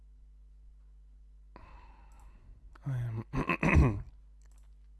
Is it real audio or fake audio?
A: real